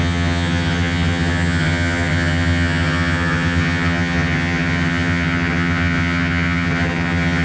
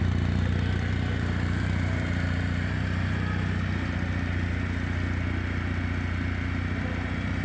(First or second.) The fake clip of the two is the first